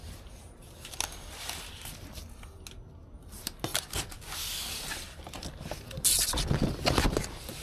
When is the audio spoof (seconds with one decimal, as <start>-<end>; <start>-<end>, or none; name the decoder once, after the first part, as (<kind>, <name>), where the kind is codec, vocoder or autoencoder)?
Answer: none